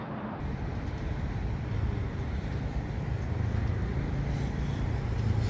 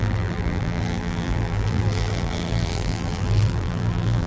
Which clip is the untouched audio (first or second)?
first